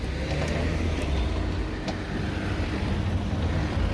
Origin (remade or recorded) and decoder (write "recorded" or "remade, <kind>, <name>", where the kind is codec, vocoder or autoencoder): recorded